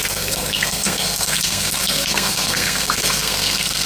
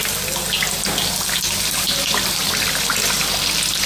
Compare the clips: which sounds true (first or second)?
second